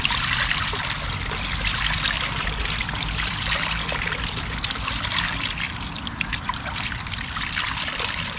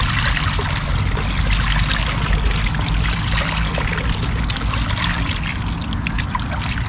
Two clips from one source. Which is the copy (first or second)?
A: first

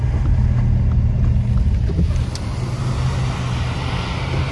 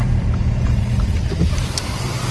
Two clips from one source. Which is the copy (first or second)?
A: second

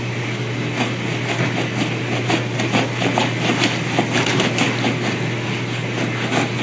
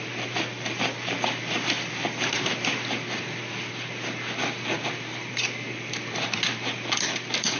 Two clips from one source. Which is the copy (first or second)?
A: second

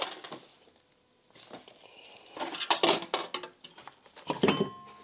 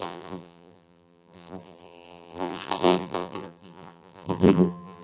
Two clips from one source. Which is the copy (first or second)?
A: second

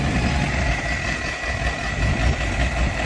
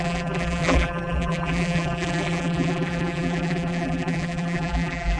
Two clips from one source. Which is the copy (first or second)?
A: second